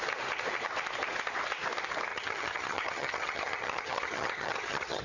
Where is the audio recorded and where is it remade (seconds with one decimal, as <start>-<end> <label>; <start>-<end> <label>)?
0.0-2.1 recorded; 2.1-5.0 remade